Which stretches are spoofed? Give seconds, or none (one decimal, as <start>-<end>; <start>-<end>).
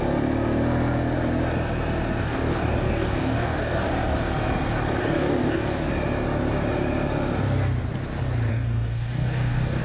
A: 2.2-3.9; 5.0-5.9; 8.5-9.8